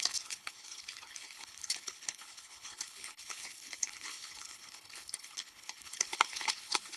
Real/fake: fake